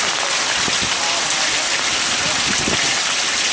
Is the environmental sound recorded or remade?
recorded